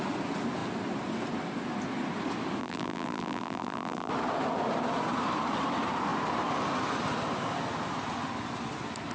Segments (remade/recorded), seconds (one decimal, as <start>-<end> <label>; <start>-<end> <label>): 0.0-2.6 recorded; 2.6-4.1 remade; 4.1-9.1 recorded